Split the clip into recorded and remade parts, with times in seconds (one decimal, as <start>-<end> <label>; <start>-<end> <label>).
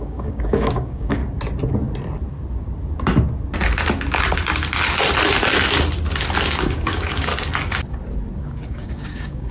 0.0-1.2 remade; 1.2-6.4 recorded; 6.4-7.3 remade; 7.3-8.4 recorded; 8.4-9.5 remade